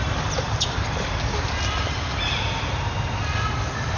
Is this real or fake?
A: real